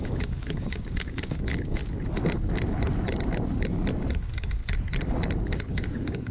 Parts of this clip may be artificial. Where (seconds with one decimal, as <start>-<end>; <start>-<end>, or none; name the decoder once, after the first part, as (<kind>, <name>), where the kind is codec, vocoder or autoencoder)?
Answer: 0.0-1.8 (codec, DAC); 4.1-4.6; 5.7-6.3